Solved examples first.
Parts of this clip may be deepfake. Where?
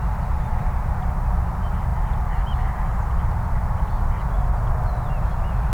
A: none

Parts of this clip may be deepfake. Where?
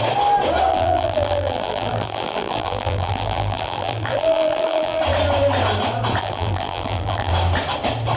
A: 0.7-5.0 (vocoder, BigVGAN v2); 6.2-7.3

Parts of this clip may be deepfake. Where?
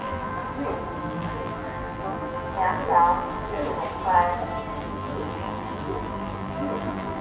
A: 0.0-0.4 (vocoder, BigVGAN v2); 1.0-3.6; 4.8-7.2